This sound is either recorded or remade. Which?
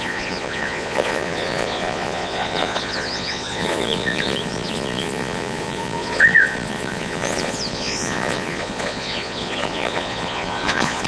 remade